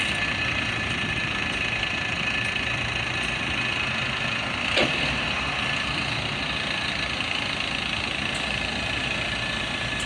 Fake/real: real